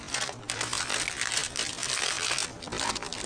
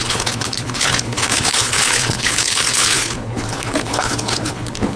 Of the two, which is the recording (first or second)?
first